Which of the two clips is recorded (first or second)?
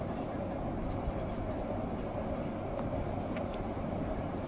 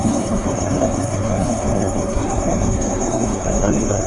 first